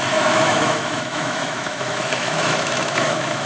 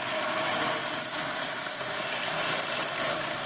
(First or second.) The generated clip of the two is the first